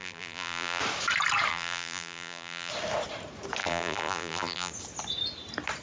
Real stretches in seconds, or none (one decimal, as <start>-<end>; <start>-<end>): 0.8-1.5; 2.7-3.6; 4.7-5.8